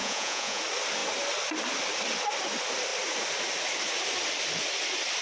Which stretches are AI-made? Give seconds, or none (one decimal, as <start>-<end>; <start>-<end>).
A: 0.0-0.6